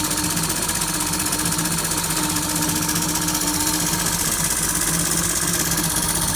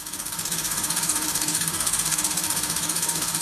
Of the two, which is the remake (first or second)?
second